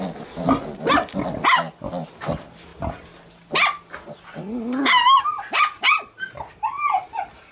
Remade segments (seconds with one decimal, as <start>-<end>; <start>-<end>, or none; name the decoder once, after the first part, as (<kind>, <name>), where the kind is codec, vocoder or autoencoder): none